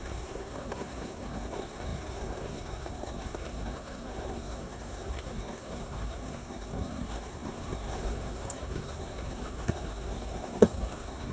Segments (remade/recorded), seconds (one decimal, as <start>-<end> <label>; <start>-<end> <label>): 0.0-11.3 remade